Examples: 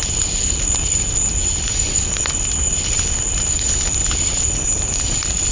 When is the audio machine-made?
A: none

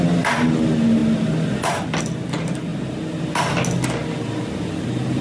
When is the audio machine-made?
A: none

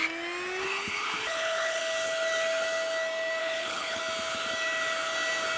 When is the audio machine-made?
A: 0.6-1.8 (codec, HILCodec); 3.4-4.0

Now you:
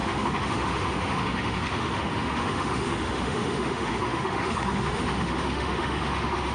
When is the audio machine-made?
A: 0.0-6.5 (autoencoder, DAC-VAE)